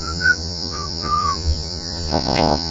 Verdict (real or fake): fake